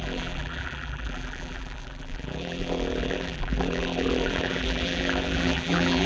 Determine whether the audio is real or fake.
fake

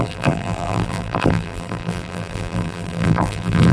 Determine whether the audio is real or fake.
fake